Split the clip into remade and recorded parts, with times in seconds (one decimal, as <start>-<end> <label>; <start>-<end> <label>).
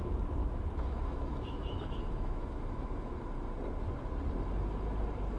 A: 0.0-0.4 recorded; 0.4-3.1 remade; 3.1-5.4 recorded